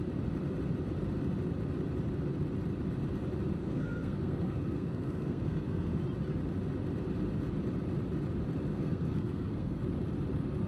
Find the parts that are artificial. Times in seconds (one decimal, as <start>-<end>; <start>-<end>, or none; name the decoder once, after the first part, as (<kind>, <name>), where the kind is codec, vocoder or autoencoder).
3.6-6.0 (codec, SNAC); 8.7-9.8